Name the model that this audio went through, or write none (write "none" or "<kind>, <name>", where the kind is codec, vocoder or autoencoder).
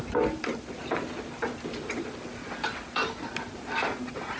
none